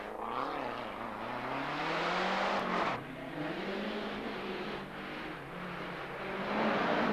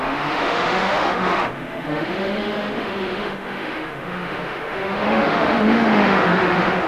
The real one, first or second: first